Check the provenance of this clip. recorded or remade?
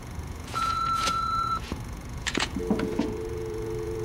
remade